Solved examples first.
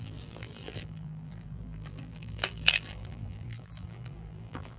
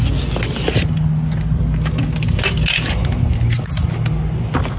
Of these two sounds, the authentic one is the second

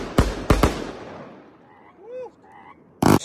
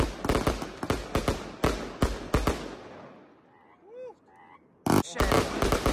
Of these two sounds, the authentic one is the second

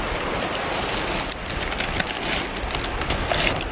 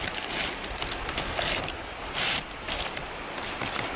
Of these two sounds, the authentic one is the first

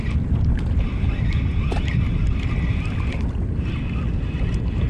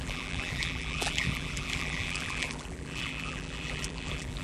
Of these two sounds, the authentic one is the first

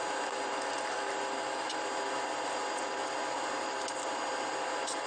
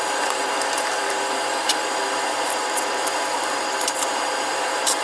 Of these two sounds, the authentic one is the first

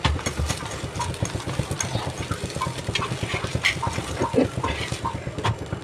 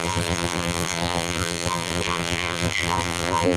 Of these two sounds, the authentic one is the first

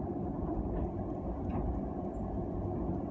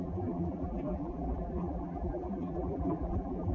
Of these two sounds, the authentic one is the first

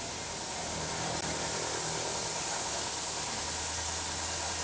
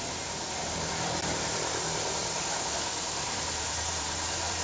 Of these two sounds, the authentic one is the first